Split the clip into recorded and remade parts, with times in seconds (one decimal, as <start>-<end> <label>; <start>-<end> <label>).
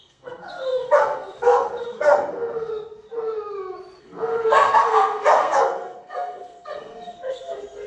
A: 0.0-2.7 remade; 2.7-4.0 recorded; 4.0-7.9 remade